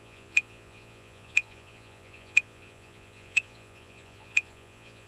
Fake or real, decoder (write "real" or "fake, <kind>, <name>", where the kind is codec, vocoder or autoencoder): fake, vocoder, Vocos